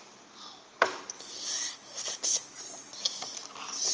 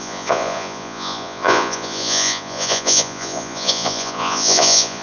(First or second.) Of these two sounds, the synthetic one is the second